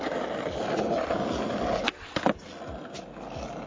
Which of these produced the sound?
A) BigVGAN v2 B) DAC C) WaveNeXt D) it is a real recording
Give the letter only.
D